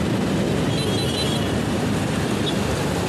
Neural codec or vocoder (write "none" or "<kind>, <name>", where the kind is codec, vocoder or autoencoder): none